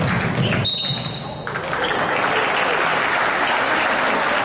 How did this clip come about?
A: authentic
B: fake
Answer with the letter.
A